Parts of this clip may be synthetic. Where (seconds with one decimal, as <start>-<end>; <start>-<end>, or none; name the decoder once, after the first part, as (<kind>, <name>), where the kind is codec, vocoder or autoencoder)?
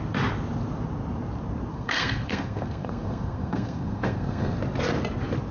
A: 1.7-4.6 (codec, SNAC)